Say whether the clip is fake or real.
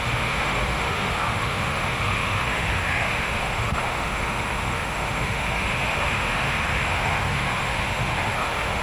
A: fake